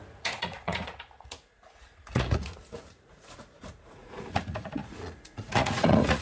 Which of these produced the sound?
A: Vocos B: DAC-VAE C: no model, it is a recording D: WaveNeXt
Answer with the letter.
A